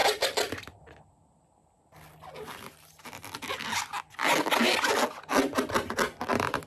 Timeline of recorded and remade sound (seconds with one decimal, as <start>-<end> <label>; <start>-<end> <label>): 0.0-0.8 remade; 0.8-6.7 recorded